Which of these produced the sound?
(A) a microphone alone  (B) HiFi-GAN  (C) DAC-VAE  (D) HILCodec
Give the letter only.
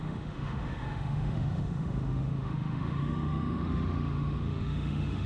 C